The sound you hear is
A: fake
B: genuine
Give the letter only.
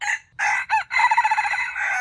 B